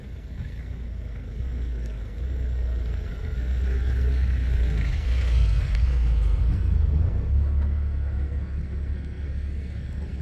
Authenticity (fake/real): fake